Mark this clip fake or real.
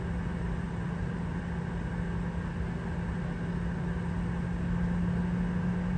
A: real